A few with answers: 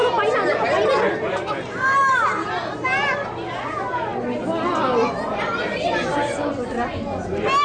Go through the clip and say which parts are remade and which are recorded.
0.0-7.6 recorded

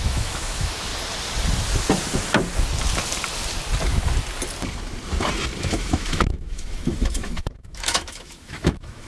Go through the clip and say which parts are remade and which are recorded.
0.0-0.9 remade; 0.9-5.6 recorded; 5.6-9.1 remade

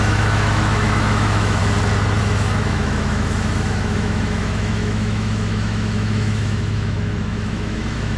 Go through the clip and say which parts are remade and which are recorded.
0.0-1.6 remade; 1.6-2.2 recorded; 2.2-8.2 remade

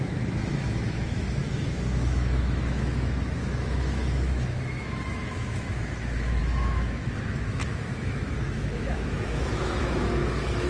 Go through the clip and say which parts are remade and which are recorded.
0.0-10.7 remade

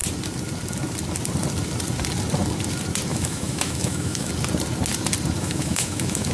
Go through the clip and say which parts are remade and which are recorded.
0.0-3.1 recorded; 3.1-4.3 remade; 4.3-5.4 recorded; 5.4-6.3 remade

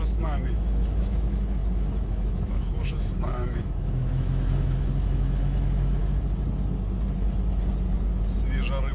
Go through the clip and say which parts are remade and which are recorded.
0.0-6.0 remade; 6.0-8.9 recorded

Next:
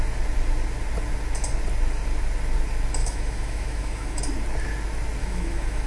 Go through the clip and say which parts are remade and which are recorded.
0.0-3.0 recorded; 3.0-4.2 remade; 4.2-5.2 recorded; 5.2-5.9 remade

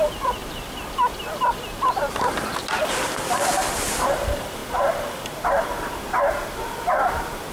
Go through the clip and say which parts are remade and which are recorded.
0.0-7.5 recorded